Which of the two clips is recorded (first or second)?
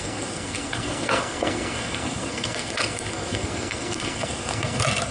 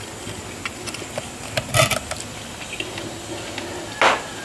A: second